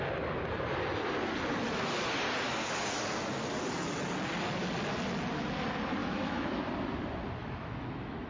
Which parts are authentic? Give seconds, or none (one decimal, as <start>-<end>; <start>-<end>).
0.0-6.0; 6.6-7.4